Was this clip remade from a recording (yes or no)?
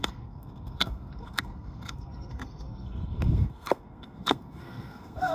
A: yes